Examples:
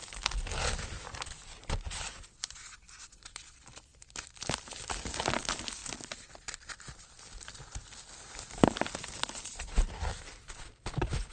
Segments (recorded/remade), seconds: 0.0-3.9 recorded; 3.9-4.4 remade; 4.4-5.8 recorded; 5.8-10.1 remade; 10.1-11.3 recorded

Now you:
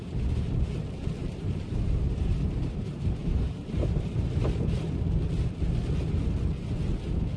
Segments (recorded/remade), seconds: 0.0-1.2 recorded; 1.2-5.0 remade; 5.0-7.4 recorded